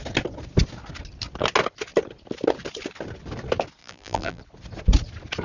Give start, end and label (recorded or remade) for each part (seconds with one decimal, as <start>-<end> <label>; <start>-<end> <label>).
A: 0.0-3.8 recorded; 3.8-4.4 remade; 4.4-5.4 recorded